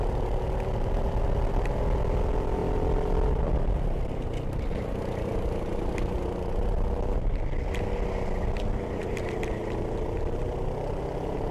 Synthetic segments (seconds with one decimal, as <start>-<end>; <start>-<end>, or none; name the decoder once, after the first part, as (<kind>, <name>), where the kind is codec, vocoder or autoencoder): 2.6-3.4 (vocoder, BigVGAN v2)